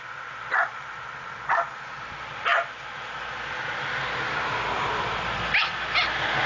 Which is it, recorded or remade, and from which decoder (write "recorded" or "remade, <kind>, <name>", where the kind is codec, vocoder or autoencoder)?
recorded